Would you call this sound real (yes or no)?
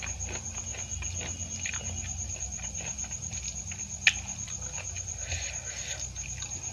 yes